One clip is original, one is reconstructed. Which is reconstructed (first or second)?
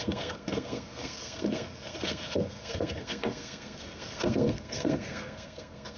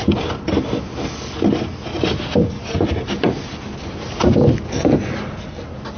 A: first